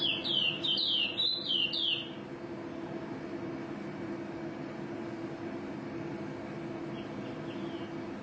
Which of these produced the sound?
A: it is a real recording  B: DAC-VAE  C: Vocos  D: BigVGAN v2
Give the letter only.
A